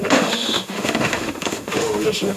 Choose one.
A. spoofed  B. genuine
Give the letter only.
A